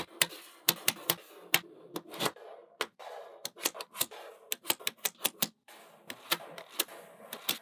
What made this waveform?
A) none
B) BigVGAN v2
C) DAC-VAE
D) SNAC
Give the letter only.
A